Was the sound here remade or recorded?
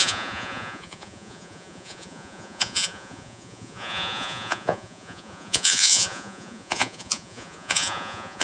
remade